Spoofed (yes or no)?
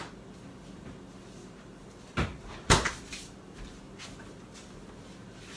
no